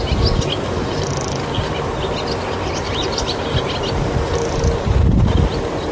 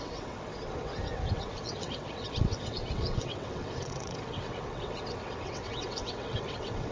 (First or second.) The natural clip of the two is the first